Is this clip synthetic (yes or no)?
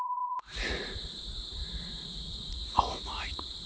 yes